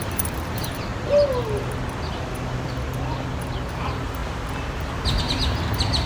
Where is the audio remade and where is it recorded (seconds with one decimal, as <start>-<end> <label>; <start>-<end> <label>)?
0.0-0.9 remade; 0.9-3.7 recorded; 3.7-4.2 remade; 4.2-5.2 recorded; 5.2-6.1 remade